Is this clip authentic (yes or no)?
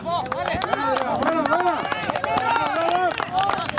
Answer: yes